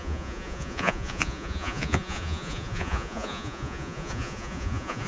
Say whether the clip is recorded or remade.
remade